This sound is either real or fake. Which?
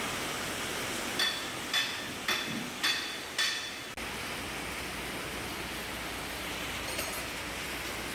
real